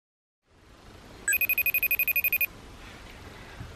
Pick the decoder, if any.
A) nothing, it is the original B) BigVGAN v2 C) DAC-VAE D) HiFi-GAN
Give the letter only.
A